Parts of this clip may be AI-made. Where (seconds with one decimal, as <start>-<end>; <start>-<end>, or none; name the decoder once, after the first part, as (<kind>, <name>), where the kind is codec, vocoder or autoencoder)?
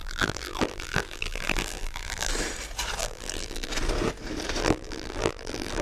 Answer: 0.0-2.3 (vocoder, BigVGAN v2); 3.0-3.7; 4.6-5.8